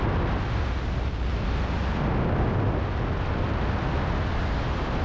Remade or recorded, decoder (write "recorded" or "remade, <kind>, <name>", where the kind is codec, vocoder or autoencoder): recorded